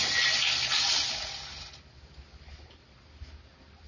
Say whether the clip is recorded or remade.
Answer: recorded